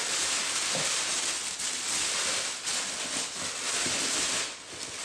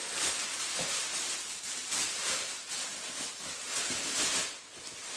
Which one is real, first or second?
first